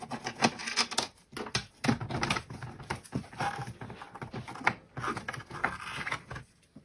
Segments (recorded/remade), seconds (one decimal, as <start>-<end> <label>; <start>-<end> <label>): 0.0-6.8 recorded

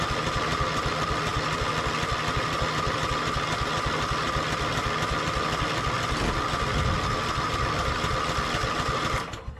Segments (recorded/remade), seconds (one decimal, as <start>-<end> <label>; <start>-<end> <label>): 0.0-9.6 recorded